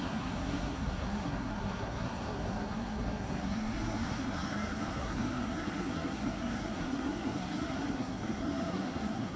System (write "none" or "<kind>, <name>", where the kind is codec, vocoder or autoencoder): codec, SNAC